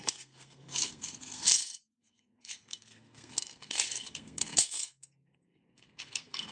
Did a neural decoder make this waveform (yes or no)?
yes